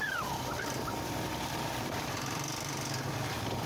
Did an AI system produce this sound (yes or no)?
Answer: yes